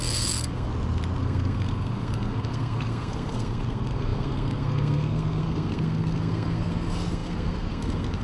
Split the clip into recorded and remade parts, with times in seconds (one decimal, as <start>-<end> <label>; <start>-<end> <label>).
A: 0.0-0.7 remade; 0.7-1.2 recorded; 1.2-8.2 remade